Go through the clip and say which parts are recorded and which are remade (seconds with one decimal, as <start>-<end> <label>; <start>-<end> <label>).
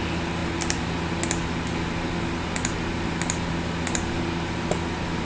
0.0-5.2 recorded